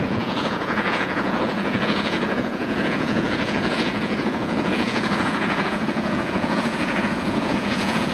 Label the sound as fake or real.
fake